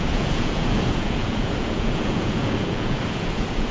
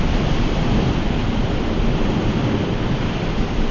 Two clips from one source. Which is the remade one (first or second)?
first